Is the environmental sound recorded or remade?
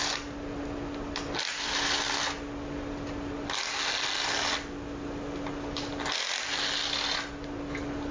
recorded